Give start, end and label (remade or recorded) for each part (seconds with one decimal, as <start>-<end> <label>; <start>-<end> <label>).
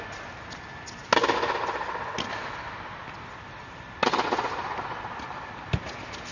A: 0.0-6.3 recorded